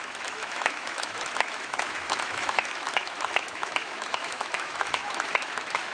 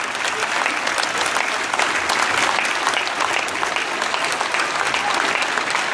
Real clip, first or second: second